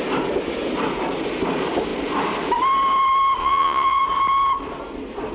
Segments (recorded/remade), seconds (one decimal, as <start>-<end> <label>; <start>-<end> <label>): 0.0-3.4 recorded; 3.4-4.0 remade; 4.0-5.3 recorded